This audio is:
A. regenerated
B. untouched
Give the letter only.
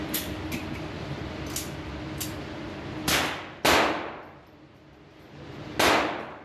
B